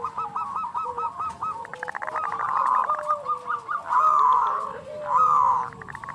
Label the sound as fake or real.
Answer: real